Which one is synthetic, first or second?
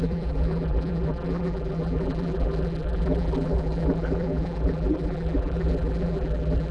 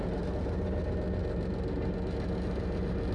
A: first